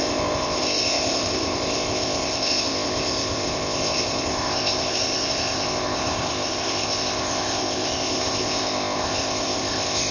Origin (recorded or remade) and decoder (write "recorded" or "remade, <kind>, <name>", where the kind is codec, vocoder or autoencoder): remade, codec, ZipCodec